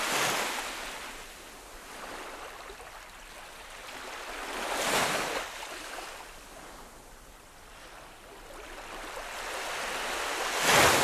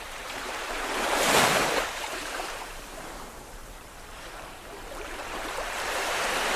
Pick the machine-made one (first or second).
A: second